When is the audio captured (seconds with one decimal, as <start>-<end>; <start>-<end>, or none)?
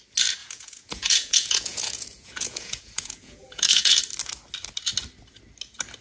0.0-0.4; 4.0-6.0